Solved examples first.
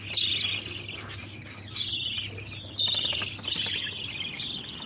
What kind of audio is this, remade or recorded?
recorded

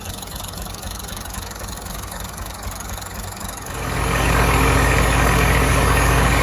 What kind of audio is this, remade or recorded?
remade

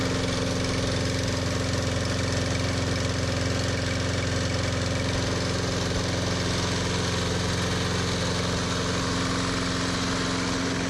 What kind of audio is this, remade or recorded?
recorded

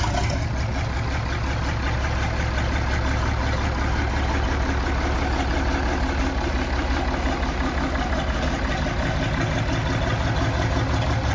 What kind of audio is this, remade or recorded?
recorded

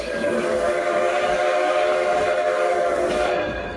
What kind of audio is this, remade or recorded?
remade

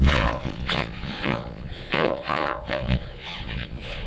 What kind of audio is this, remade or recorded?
remade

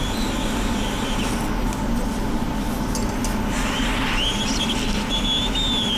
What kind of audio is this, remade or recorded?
recorded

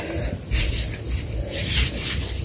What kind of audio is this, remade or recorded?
recorded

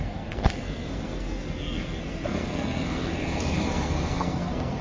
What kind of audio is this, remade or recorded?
remade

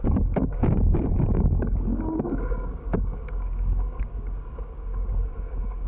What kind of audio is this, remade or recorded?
remade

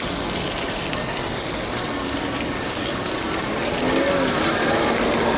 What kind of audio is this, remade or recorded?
recorded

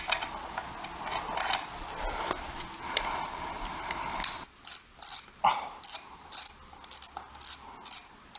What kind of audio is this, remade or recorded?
recorded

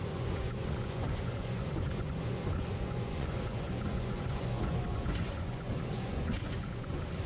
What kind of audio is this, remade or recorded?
remade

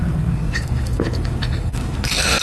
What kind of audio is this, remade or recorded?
remade